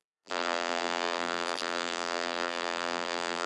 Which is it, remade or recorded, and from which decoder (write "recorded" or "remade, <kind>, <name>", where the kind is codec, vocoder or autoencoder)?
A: remade, vocoder, BigVGAN v2